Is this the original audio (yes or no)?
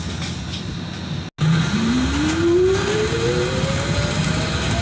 yes